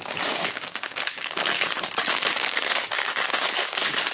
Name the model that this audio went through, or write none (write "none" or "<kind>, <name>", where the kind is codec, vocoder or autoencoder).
codec, DAC